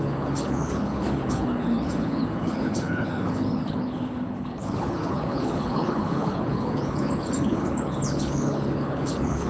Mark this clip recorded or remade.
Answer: remade